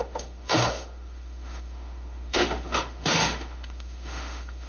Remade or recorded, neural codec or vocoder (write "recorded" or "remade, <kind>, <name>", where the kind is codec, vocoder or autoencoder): remade, autoencoder, DAC-VAE